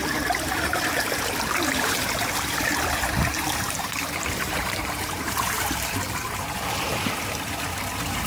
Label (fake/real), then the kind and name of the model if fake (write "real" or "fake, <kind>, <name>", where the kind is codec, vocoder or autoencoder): fake, vocoder, BigVGAN v2